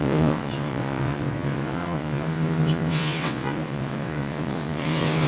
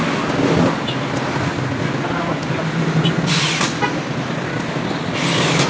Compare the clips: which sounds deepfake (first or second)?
first